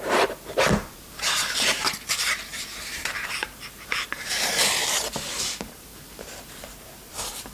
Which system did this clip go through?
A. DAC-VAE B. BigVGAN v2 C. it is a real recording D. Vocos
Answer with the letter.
B